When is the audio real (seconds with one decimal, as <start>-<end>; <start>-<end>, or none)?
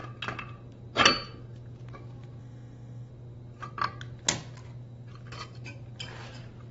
0.0-2.4; 3.1-6.7